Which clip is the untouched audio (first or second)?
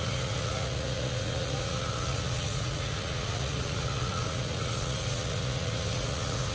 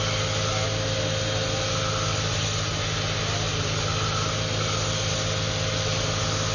second